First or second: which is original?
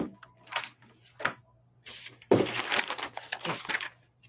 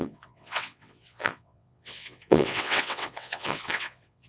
first